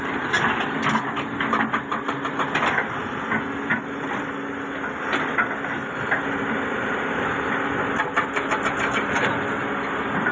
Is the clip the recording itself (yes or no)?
yes